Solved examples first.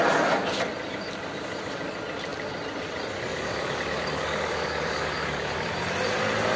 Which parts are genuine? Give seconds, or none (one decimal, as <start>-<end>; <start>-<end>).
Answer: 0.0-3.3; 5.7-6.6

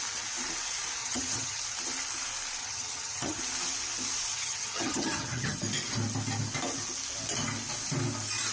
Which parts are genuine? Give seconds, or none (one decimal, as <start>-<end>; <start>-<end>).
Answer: 0.0-1.0; 1.6-2.6; 3.4-4.3; 5.6-8.5

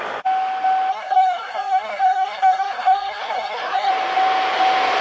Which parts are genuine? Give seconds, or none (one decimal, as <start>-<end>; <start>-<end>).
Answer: 0.0-0.9; 3.9-5.0

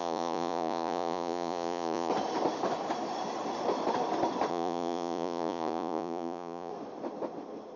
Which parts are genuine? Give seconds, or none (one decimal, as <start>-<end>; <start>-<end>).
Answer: 2.1-4.5; 6.7-7.8

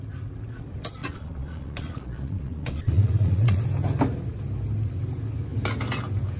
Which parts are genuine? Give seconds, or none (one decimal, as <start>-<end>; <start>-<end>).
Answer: 0.0-1.0; 3.6-6.4